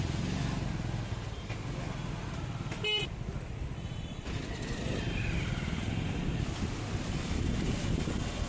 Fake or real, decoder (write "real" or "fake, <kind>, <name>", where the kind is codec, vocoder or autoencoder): real